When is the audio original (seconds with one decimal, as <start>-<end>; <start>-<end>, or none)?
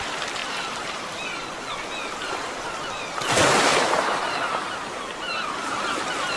0.0-0.4; 1.6-3.7; 5.8-6.4